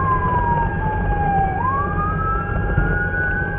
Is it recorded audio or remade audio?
remade